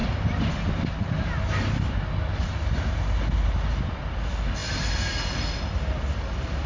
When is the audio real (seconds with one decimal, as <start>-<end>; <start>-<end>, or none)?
0.0-4.6; 5.1-6.7